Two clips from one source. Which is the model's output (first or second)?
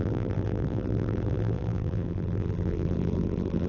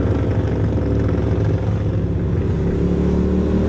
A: first